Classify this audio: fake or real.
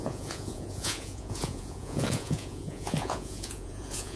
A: fake